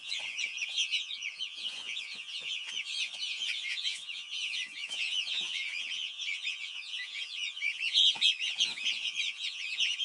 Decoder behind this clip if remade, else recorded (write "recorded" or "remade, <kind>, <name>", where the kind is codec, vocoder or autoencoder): remade, vocoder, Vocos